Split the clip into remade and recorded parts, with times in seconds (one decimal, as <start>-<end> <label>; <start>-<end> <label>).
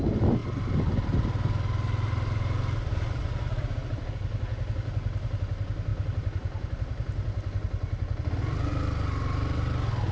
0.0-10.1 recorded